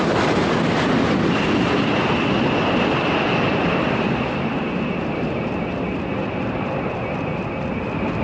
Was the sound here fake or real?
real